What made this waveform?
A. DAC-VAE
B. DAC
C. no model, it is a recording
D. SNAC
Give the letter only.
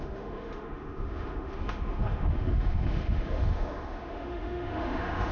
A